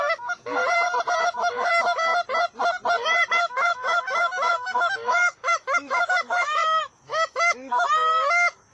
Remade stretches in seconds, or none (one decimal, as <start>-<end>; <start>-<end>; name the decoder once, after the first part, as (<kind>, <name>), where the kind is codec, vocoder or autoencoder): 0.0-0.6 (autoencoder, DAC-VAE); 1.2-2.1; 3.3-8.7